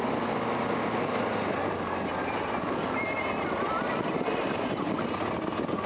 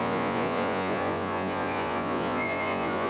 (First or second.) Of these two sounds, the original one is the first